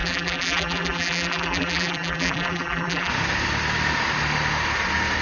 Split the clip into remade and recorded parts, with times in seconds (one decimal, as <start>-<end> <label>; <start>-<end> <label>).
0.0-3.1 remade; 3.1-5.2 recorded